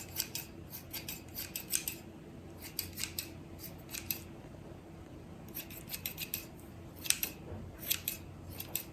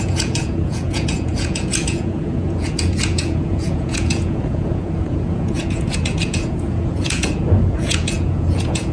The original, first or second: first